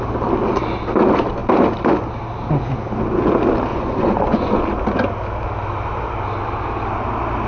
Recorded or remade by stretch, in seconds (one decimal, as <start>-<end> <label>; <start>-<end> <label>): 0.0-3.7 recorded; 3.7-4.6 remade; 4.6-7.5 recorded